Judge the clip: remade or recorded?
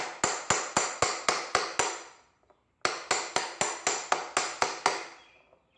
recorded